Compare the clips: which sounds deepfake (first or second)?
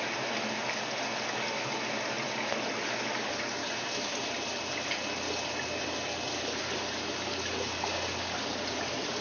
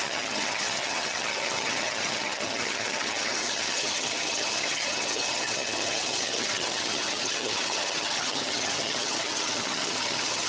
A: second